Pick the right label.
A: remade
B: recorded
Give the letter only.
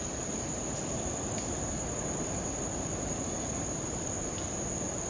B